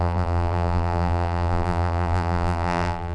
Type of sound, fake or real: fake